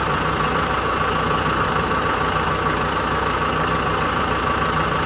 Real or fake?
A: fake